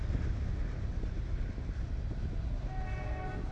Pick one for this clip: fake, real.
real